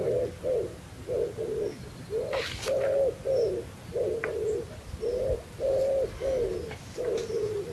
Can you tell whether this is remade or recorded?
recorded